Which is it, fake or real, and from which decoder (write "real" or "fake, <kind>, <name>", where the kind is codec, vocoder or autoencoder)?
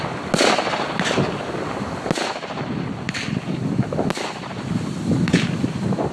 real